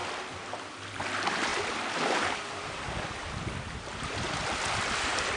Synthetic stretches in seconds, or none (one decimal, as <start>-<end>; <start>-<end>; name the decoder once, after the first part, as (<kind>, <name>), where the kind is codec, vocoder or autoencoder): 0.0-1.5 (vocoder, BigVGAN v2); 4.1-5.4